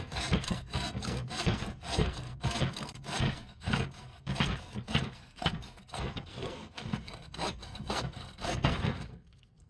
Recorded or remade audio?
remade